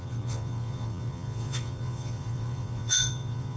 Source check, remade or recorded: remade